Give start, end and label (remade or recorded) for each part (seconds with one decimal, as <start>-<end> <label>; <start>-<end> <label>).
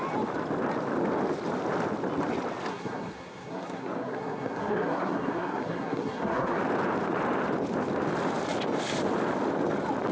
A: 0.0-2.7 recorded; 2.7-6.6 remade; 6.6-10.1 recorded